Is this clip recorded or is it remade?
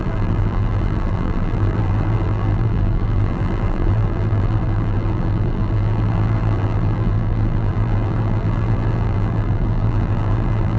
remade